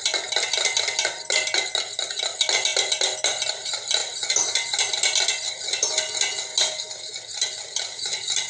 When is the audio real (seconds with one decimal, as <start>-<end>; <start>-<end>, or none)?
0.0-8.5